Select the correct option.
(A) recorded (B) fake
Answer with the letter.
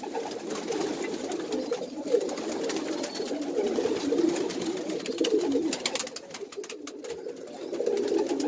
A